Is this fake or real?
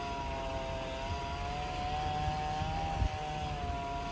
real